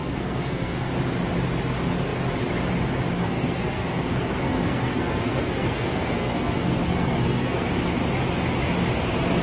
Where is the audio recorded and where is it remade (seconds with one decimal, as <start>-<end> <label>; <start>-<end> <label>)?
0.0-0.9 remade; 0.9-3.2 recorded; 3.2-7.7 remade; 7.7-9.4 recorded